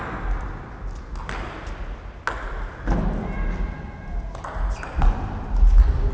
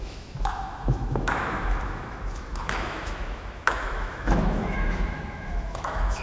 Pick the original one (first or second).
first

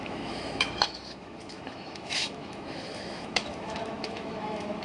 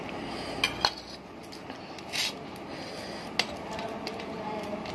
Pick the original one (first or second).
second